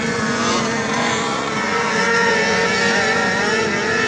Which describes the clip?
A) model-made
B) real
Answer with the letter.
A